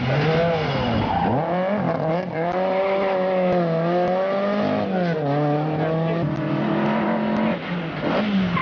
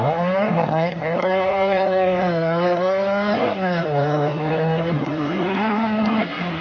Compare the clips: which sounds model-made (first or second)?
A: second